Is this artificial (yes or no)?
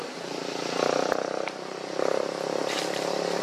no